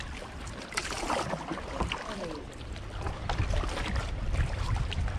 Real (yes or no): no